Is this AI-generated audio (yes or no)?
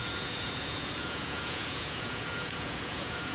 yes